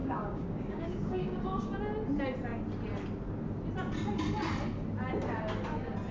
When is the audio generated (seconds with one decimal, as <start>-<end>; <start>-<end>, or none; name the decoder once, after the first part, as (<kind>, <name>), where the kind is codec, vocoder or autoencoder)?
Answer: 0.0-1.8 (codec, DAC)